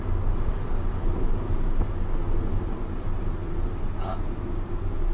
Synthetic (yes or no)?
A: no